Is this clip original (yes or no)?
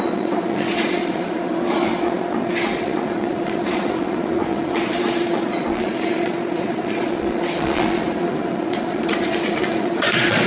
no